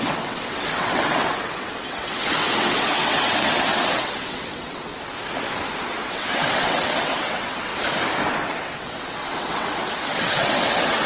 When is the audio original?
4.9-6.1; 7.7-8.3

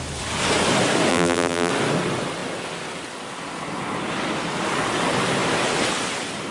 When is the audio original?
0.0-1.1; 1.7-6.5

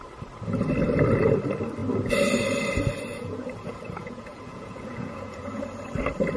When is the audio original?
0.0-3.1; 5.6-6.4

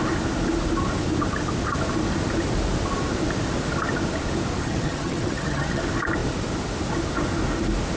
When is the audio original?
0.0-4.6; 5.8-8.0

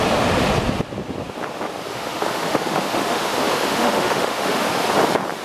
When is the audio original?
0.0-1.9; 4.7-5.4

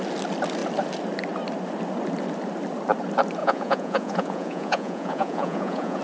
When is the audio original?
0.0-3.4

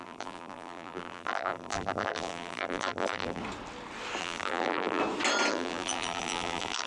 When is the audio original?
3.4-4.2; 5.0-5.5

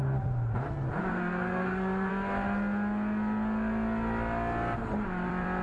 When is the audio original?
0.0-1.1; 2.1-5.6